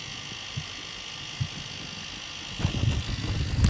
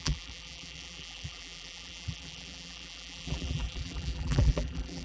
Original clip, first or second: first